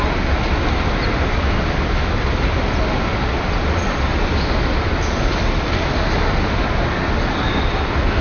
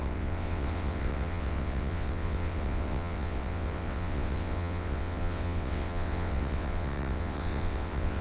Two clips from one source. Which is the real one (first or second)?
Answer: first